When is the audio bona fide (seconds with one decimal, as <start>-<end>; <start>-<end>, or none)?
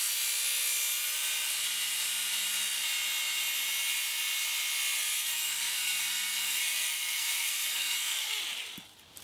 0.0-5.3; 8.4-9.2